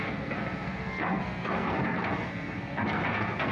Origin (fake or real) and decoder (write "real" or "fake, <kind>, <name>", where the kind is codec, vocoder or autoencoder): fake, codec, SNAC